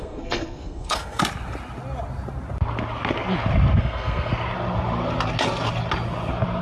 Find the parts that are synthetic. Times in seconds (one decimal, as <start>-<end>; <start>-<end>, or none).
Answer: 0.0-1.2; 3.8-4.3